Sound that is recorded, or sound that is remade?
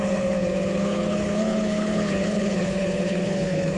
remade